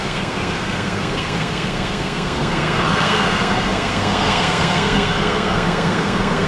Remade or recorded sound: remade